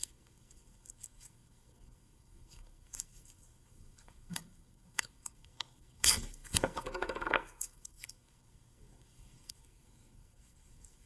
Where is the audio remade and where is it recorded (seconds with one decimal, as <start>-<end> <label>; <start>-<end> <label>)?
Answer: 0.0-11.1 remade